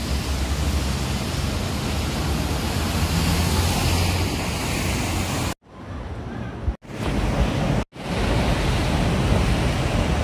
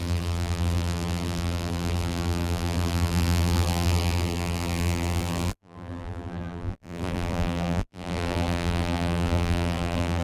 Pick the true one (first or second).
first